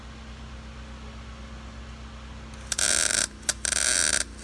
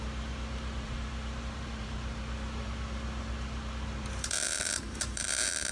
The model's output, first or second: second